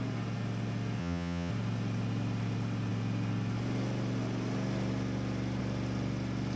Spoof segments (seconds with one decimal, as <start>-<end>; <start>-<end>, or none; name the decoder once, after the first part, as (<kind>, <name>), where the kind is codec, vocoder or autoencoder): 1.0-1.5 (vocoder, HiFi-GAN)